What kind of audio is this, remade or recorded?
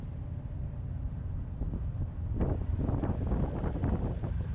recorded